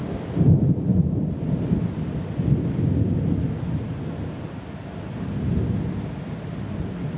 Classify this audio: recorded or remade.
recorded